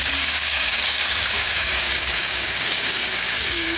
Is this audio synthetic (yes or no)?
yes